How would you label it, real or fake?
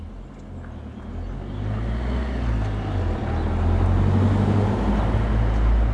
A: real